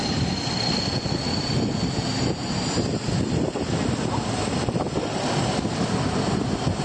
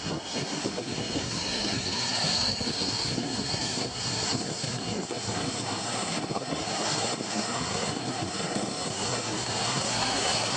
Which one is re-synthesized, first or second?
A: second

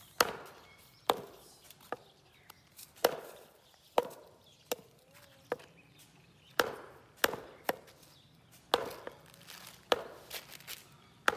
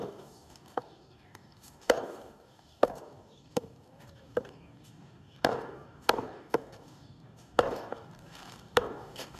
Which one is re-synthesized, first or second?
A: second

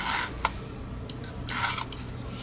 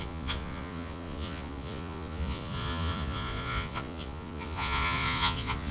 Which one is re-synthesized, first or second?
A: second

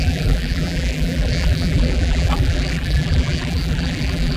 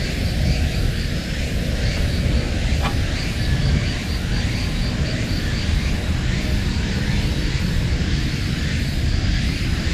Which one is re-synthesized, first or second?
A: first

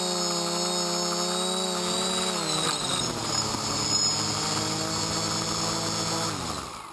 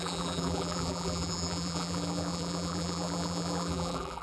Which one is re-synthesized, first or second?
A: second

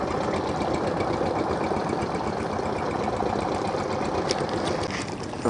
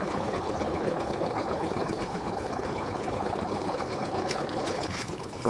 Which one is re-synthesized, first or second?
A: second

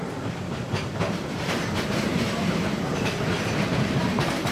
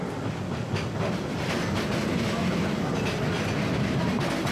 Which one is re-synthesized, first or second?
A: first